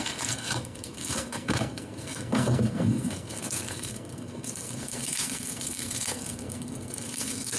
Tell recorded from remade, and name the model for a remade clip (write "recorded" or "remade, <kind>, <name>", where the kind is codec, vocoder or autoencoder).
remade, codec, SNAC